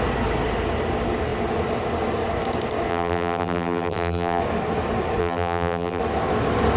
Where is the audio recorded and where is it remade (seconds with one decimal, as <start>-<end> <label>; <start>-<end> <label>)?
0.0-2.9 recorded; 2.9-4.4 remade; 4.4-5.2 recorded; 5.2-6.0 remade; 6.0-6.8 recorded